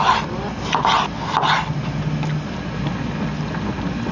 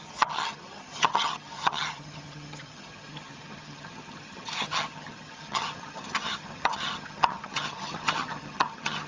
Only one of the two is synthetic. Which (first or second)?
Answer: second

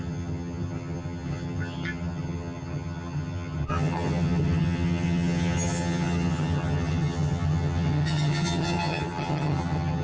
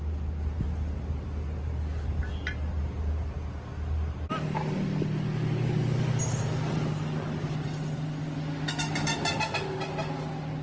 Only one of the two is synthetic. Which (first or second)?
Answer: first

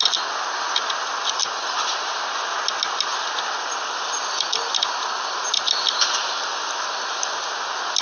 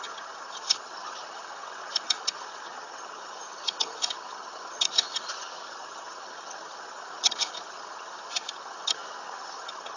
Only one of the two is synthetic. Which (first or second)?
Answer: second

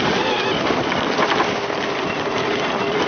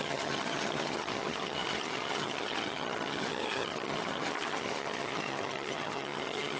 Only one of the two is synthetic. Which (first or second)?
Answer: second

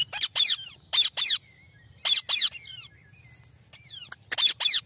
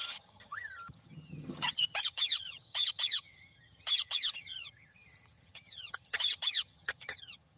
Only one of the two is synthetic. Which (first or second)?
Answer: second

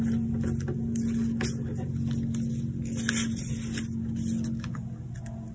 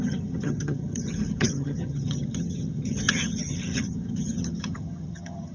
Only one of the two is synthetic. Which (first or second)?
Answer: second